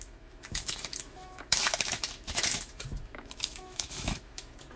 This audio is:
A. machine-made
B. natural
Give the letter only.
A